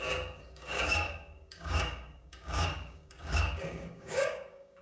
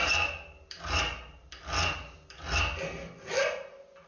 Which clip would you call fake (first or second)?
first